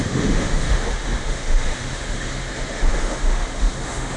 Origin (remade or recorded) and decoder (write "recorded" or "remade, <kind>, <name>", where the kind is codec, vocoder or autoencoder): remade, autoencoder, DAC-VAE